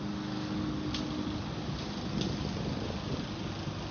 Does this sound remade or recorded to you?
recorded